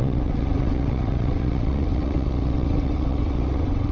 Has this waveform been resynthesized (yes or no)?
yes